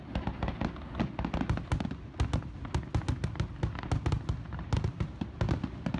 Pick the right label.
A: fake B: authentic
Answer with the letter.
B